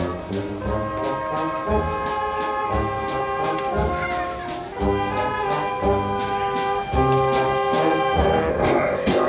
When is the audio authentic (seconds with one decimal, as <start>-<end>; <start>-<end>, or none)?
0.0-8.5